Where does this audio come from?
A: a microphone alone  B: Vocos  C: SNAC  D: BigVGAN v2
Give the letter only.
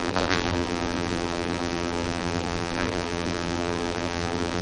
D